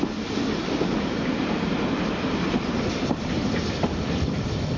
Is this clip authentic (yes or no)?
yes